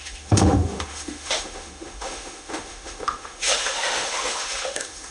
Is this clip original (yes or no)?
no